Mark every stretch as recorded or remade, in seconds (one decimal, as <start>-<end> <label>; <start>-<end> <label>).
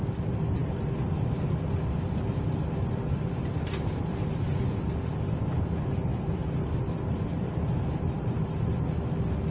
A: 0.0-9.5 recorded